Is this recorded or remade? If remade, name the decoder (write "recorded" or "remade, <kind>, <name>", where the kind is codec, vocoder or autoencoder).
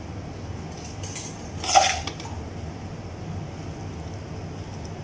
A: recorded